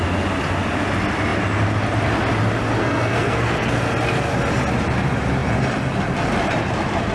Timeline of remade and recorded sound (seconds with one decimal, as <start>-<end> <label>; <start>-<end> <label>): 0.0-2.8 recorded; 2.8-3.8 remade; 3.8-7.1 recorded